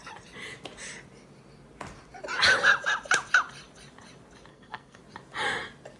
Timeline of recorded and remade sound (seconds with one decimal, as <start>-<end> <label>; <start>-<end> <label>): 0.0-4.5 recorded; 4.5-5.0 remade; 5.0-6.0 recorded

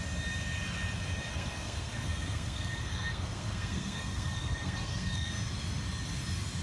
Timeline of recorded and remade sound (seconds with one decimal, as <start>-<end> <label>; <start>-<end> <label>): 0.0-1.3 recorded; 1.3-5.3 remade; 5.3-6.6 recorded

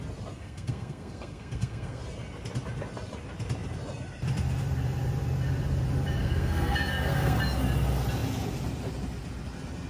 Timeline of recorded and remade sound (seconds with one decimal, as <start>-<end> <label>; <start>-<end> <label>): 0.0-0.4 recorded; 0.4-2.0 remade; 2.0-6.2 recorded; 6.2-7.4 remade; 7.4-9.9 recorded